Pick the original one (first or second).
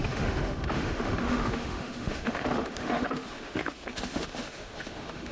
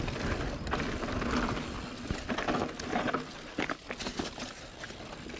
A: second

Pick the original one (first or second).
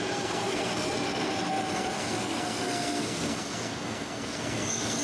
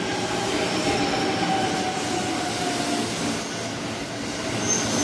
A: second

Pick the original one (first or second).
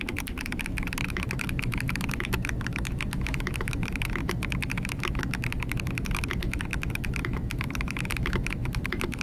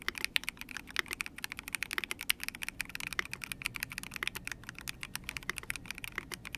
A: second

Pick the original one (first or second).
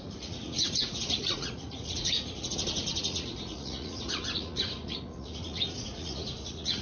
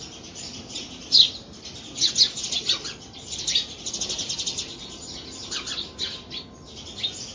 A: second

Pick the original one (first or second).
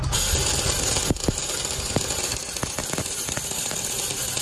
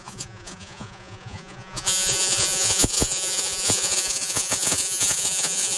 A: first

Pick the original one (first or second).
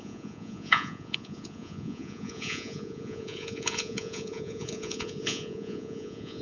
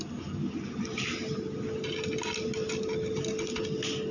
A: second